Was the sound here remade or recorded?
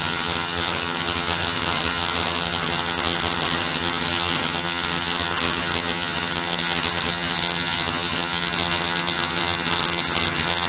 remade